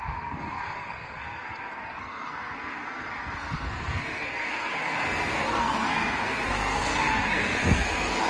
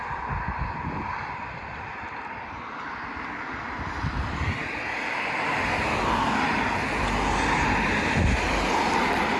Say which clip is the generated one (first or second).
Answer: first